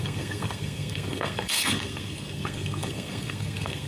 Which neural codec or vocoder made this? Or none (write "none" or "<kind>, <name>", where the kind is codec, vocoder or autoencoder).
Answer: codec, SNAC